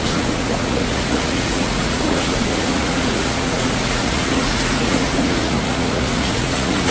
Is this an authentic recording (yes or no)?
no